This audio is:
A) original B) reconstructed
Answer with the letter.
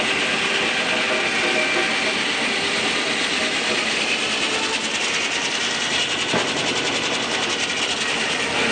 A